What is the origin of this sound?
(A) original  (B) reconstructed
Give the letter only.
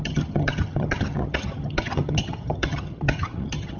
B